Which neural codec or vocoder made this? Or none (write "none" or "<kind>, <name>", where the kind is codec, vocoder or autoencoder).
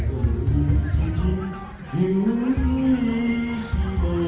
none